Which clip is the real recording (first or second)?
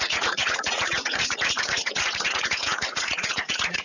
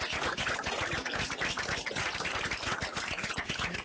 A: second